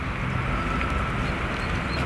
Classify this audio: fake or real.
real